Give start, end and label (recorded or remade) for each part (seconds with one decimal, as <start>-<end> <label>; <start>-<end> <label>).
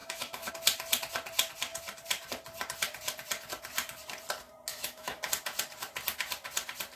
0.0-0.5 remade; 0.5-4.7 recorded; 4.7-5.3 remade; 5.3-6.9 recorded